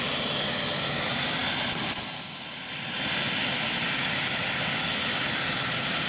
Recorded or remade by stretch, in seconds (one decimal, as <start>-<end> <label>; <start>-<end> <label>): 0.0-6.1 recorded